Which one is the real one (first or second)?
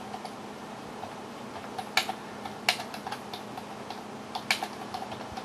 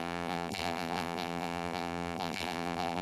first